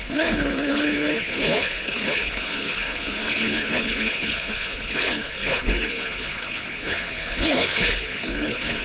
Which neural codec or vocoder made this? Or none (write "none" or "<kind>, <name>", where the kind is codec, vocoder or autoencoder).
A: codec, HILCodec